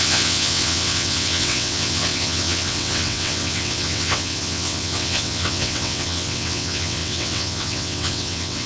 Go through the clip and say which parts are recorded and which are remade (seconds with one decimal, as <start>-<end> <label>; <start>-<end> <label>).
0.0-8.7 remade

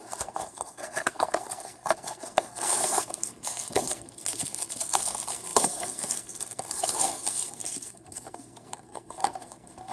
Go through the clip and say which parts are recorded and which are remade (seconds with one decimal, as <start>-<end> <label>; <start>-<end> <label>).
0.0-9.9 remade

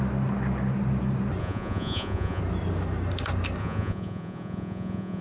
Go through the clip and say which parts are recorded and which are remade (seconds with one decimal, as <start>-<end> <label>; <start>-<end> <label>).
0.0-1.4 recorded; 1.4-2.4 remade; 2.4-3.6 recorded; 3.6-5.2 remade

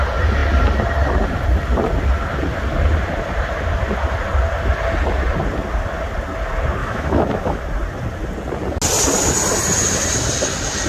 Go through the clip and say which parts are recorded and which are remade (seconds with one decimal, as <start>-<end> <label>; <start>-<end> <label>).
0.0-6.8 recorded; 6.8-7.6 remade; 7.6-10.9 recorded